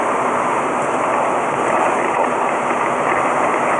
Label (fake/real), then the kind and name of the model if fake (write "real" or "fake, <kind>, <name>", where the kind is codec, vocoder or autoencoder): real